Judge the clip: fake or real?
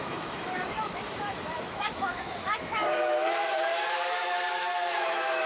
fake